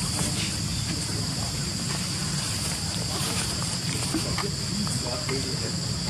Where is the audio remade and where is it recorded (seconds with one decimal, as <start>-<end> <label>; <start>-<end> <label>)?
0.0-0.7 recorded; 0.7-1.6 remade; 1.6-2.2 recorded; 2.2-3.6 remade; 3.6-6.1 recorded